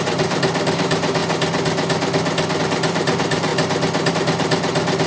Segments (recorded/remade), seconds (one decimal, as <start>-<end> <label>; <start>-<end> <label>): 0.0-1.2 remade; 1.2-2.6 recorded; 2.6-3.5 remade; 3.5-4.1 recorded; 4.1-5.1 remade